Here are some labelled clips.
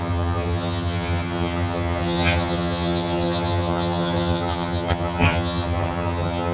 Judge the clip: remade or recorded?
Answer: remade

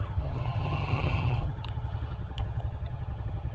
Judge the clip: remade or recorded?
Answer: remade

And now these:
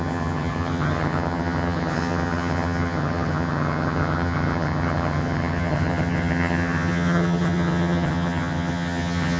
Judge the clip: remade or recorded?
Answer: remade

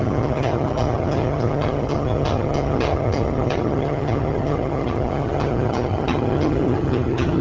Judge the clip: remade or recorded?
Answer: remade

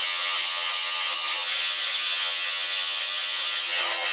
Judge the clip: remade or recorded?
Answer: remade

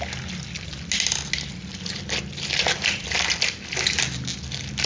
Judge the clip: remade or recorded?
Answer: recorded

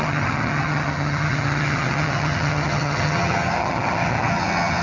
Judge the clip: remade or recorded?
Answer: remade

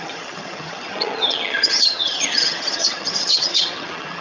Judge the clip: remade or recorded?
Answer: remade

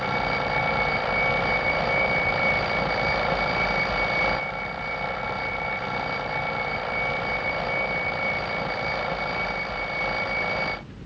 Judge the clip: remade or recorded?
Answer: recorded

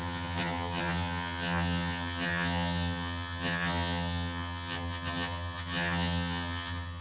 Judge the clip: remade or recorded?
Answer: remade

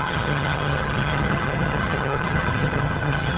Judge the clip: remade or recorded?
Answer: remade